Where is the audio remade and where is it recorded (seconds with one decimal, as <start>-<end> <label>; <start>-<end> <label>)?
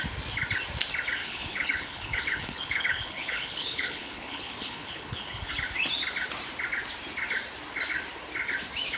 0.0-1.2 recorded; 1.2-5.5 remade; 5.5-9.0 recorded